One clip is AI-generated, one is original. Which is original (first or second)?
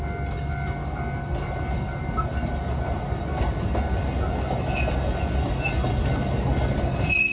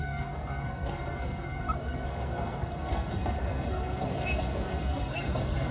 first